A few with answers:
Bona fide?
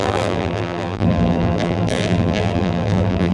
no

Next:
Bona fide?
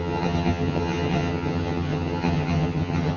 no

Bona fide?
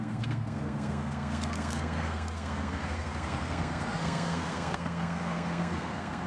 no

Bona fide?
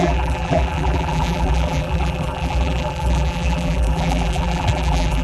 no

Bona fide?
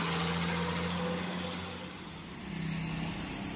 yes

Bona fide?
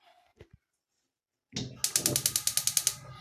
yes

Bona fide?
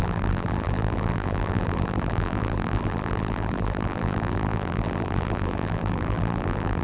no